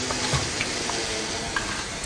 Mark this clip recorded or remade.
recorded